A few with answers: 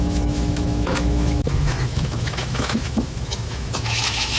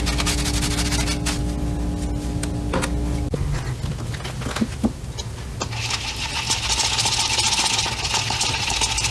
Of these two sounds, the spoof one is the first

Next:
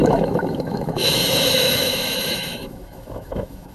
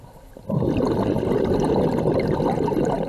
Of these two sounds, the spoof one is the first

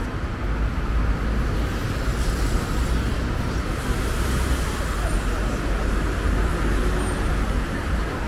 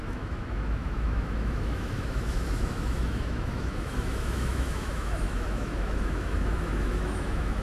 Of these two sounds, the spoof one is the second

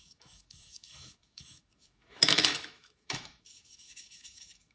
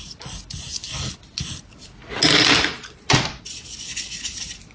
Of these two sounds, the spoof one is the first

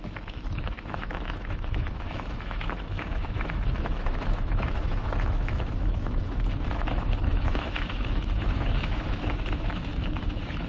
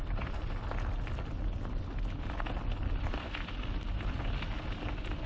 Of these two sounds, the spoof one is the first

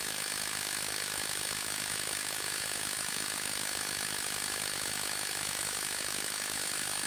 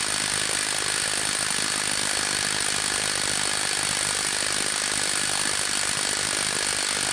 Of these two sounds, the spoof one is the first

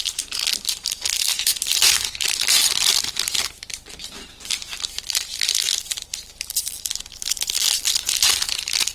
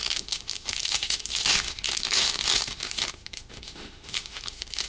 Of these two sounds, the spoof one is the second